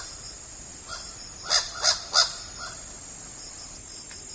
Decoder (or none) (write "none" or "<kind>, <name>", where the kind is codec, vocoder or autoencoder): none